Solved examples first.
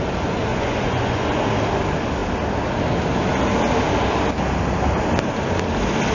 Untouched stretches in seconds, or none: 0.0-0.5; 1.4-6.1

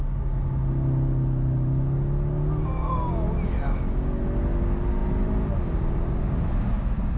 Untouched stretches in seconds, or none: 0.0-7.2